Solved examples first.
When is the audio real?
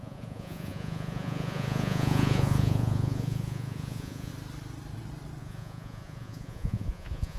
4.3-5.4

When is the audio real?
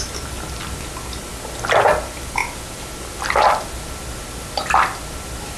0.0-5.6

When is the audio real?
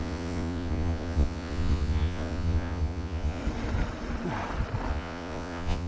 3.4-4.9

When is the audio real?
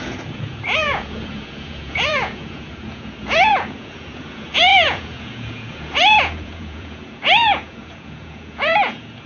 none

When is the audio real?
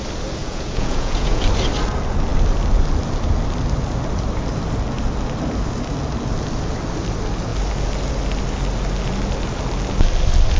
0.0-0.4; 1.4-10.6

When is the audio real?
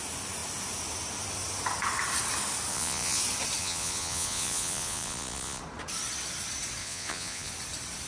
0.0-2.7; 3.2-3.6; 5.6-6.8; 7.5-8.1